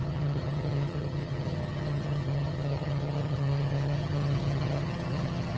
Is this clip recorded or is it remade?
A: remade